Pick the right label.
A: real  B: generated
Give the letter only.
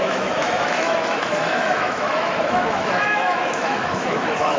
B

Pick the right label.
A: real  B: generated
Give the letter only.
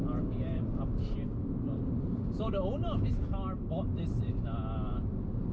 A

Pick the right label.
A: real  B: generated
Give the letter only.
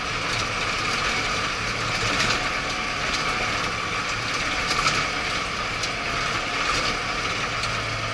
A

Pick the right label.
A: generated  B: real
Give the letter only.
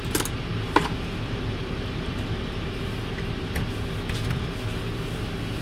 B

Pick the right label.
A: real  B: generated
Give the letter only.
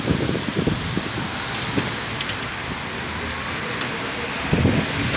A